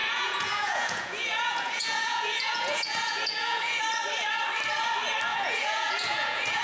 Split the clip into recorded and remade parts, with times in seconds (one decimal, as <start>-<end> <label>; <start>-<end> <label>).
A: 0.0-3.8 remade; 3.8-5.3 recorded; 5.3-6.6 remade